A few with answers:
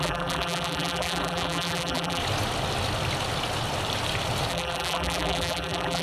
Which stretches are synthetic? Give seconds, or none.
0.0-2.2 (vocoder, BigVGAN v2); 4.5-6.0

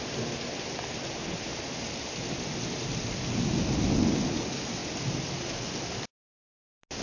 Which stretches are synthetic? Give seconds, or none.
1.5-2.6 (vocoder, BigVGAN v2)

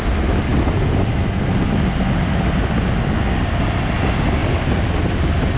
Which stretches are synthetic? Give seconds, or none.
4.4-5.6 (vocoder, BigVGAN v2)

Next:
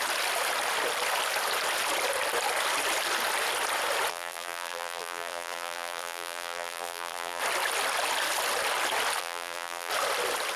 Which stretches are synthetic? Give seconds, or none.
4.1-7.4 (vocoder, BigVGAN v2); 9.2-9.9

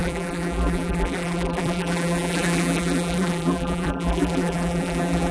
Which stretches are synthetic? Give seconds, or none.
0.0-5.3 (vocoder, BigVGAN v2)